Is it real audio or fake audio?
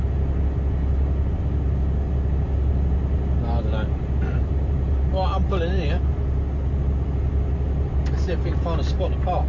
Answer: real